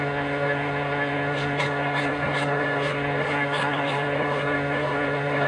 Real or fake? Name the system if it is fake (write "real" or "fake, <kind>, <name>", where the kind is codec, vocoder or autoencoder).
fake, codec, SNAC